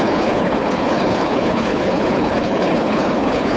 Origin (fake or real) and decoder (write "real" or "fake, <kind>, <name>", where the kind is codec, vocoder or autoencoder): fake, codec, HILCodec